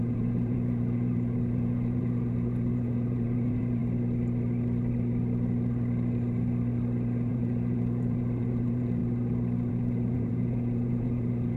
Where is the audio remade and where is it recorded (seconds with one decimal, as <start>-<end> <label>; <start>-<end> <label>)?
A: 0.0-3.8 remade; 3.8-7.3 recorded; 7.3-9.0 remade; 9.0-9.7 recorded; 9.7-11.6 remade